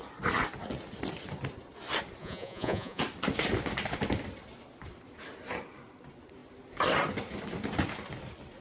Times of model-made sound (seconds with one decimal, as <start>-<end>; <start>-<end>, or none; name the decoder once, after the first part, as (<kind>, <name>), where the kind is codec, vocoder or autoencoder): 2.2-3.0 (vocoder, Vocos)